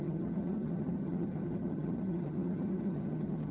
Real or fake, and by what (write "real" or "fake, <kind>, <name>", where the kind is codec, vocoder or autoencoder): fake, vocoder, HiFi-GAN